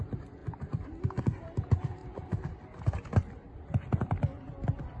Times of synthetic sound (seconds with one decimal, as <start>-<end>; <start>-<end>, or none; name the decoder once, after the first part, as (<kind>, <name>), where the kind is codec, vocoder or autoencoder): none